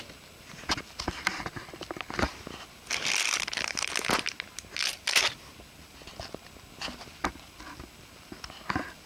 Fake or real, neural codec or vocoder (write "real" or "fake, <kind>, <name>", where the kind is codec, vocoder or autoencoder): real